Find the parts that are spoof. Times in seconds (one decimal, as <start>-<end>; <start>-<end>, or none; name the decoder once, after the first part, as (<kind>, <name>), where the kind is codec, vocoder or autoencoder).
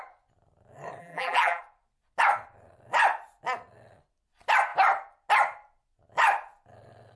1.0-1.6 (vocoder, BigVGAN v2)